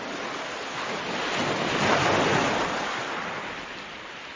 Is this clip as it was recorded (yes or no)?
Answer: yes